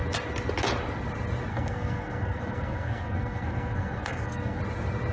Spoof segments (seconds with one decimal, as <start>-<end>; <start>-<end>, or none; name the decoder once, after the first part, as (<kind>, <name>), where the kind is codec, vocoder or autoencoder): 1.5-4.6 (codec, SNAC)